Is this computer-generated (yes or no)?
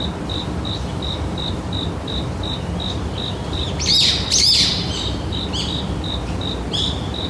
no